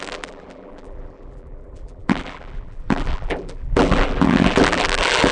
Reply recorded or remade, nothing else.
remade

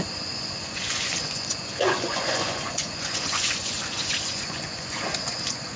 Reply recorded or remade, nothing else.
remade